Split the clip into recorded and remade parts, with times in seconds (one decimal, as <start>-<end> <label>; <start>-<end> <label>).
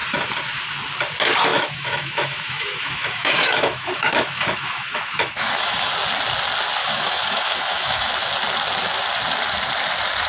0.0-1.5 recorded; 1.5-5.9 remade; 5.9-6.8 recorded; 6.8-8.1 remade; 8.1-10.3 recorded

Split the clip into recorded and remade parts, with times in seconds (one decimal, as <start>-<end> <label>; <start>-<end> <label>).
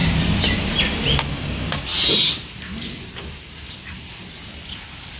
0.0-1.3 recorded; 1.3-1.9 remade; 1.9-5.2 recorded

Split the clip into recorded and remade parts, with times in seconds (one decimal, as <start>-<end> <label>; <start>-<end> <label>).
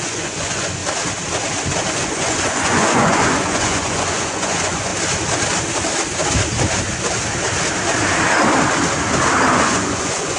0.0-0.8 remade; 0.8-1.9 recorded; 1.9-4.9 remade; 4.9-9.5 recorded; 9.5-10.4 remade